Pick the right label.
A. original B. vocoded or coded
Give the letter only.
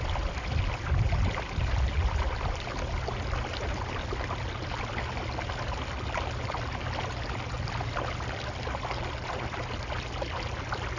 A